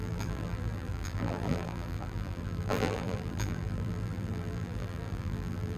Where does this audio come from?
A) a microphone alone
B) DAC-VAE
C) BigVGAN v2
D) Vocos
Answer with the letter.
C